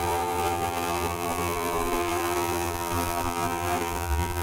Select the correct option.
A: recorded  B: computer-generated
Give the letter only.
B